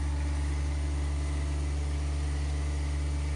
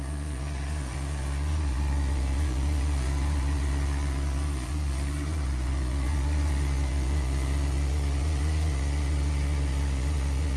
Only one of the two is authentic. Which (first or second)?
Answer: first